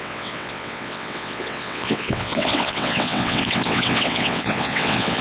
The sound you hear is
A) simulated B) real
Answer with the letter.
A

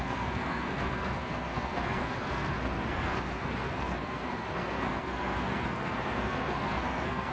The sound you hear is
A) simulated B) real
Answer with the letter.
A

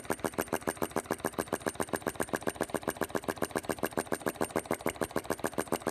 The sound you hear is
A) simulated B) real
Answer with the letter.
B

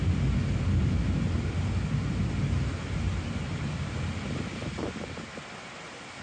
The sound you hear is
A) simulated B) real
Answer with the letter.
B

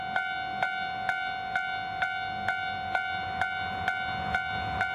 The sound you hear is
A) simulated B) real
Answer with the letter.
B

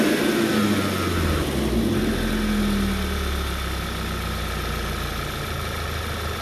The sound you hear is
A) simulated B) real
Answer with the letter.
B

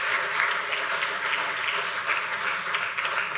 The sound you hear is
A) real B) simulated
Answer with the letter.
A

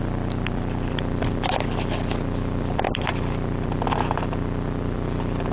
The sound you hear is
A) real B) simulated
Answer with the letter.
A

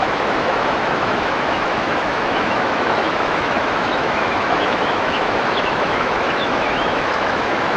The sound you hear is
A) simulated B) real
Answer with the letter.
A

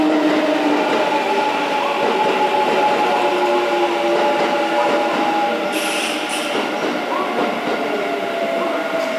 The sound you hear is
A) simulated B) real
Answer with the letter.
B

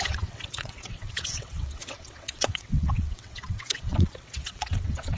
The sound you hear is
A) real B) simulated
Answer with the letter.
B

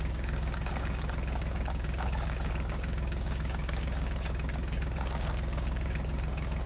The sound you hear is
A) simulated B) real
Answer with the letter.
A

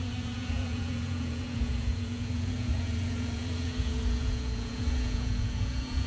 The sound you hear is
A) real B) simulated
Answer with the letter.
B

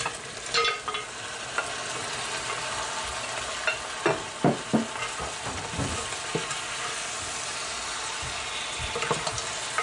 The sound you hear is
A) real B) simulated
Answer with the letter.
A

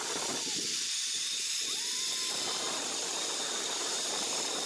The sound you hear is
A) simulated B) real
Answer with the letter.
B